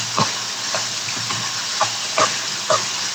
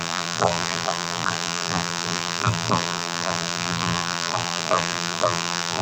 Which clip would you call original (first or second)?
first